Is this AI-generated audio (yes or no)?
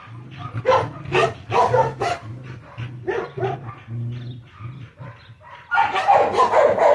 no